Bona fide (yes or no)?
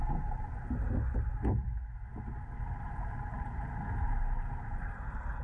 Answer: yes